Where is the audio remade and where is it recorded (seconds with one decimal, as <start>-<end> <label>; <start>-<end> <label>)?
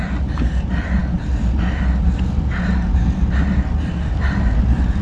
0.0-5.0 recorded